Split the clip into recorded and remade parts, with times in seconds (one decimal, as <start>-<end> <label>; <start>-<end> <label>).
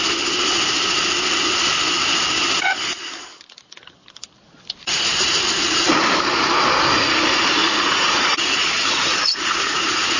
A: 0.0-7.6 recorded; 7.6-10.2 remade